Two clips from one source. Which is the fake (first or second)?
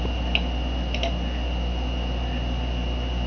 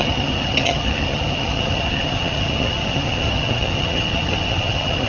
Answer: second